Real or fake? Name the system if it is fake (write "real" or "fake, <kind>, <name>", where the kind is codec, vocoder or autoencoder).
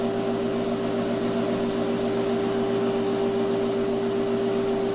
real